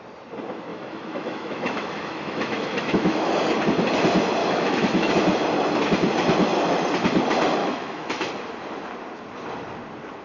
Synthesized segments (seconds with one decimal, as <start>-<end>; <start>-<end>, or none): 0.7-3.3; 4.4-5.1; 7.6-8.3

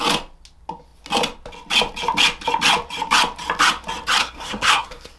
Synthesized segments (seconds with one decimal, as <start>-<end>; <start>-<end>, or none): 4.2-5.2

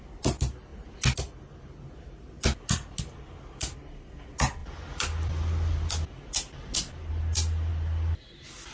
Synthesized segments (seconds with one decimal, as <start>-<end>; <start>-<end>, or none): none

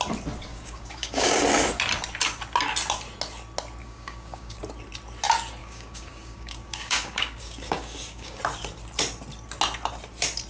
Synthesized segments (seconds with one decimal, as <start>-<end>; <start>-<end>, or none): 0.5-1.4; 3.8-4.6; 5.6-8.4